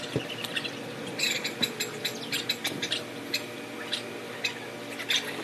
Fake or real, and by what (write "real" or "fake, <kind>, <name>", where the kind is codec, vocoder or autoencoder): real